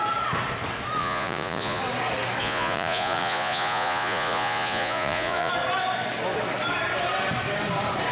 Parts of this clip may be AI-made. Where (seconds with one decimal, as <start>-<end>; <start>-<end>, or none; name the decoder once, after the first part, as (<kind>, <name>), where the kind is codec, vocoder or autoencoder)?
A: 1.0-1.8 (vocoder, Vocos); 2.4-5.5